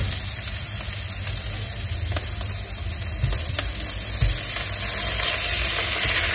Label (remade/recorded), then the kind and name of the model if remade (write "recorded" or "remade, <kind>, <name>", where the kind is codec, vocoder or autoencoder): recorded